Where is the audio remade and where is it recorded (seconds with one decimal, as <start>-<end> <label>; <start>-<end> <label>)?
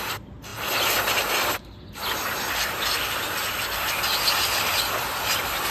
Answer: 0.0-5.7 recorded